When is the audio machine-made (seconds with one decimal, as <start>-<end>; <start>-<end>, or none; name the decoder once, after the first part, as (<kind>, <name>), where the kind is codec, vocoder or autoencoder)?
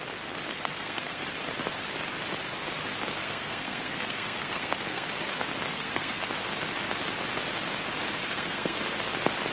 0.5-1.2 (codec, SNAC); 3.2-5.1; 5.7-6.3; 8.2-8.8